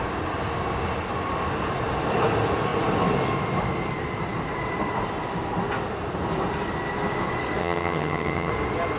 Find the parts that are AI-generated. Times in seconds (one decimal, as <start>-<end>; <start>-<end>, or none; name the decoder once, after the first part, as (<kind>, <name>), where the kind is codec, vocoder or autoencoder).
7.6-8.5 (vocoder, HiFi-GAN)